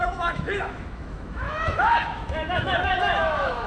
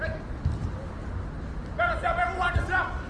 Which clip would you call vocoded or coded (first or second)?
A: first